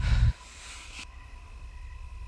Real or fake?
fake